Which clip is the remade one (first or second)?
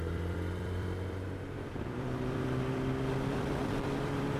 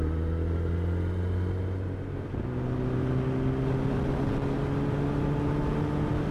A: first